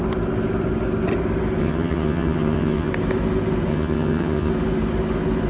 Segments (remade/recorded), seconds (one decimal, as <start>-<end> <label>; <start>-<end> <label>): 0.0-1.6 recorded; 1.6-2.9 remade; 2.9-3.7 recorded; 3.7-4.5 remade; 4.5-5.5 recorded